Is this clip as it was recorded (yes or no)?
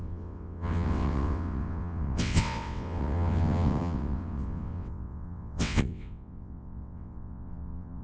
no